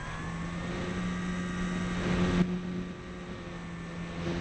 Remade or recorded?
recorded